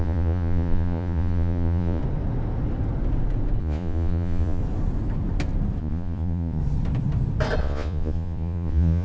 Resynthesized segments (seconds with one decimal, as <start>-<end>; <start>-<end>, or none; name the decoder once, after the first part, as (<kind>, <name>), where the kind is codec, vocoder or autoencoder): 0.0-2.0 (vocoder, Vocos); 3.6-4.6; 5.8-6.6; 7.6-9.0